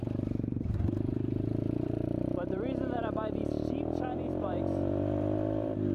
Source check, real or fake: fake